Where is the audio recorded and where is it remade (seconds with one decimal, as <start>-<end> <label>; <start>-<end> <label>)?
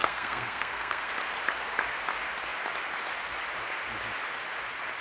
0.0-1.1 remade; 1.1-5.0 recorded